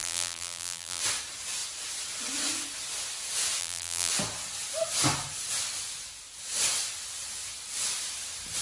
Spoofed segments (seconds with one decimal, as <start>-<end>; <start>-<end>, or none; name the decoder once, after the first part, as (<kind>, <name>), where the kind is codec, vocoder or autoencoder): 0.0-1.0 (vocoder, BigVGAN v2); 3.6-4.1